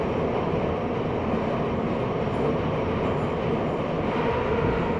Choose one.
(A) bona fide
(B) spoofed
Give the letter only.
A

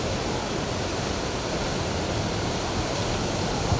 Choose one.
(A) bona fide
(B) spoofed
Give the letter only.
A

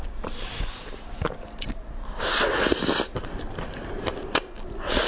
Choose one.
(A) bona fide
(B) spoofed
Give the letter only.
B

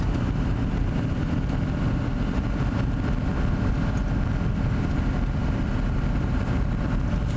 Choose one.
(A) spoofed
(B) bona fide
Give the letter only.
B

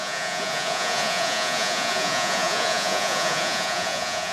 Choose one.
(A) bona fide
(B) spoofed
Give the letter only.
B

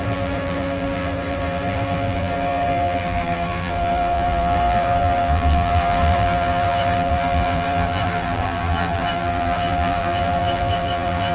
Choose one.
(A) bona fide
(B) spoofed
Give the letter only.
B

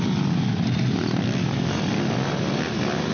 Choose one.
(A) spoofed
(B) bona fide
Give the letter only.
B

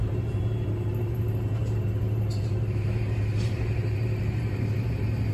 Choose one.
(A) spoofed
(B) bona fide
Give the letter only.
A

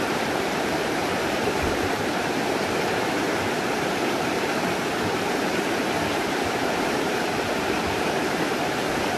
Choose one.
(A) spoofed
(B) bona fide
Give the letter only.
A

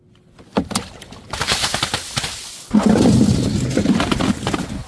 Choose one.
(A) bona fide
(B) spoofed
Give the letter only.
A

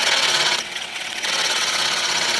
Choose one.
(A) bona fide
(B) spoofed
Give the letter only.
B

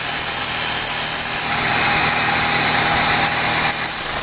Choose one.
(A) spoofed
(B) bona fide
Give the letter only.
B